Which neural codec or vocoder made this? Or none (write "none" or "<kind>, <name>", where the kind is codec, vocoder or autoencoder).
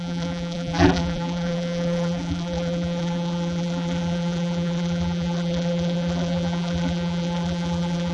vocoder, BigVGAN v2